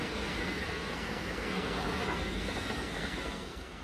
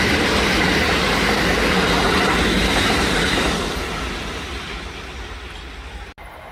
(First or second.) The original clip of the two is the second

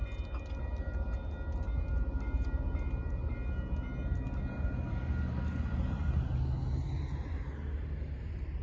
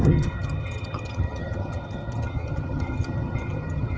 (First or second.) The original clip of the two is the first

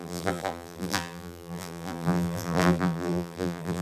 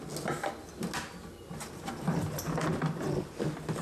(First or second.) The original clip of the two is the second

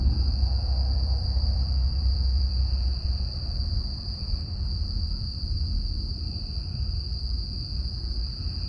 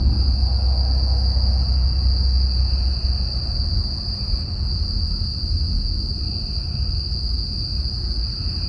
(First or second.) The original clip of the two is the second